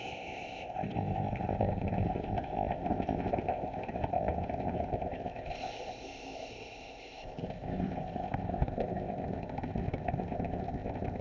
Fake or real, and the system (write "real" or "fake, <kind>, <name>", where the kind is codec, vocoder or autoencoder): fake, codec, ZipCodec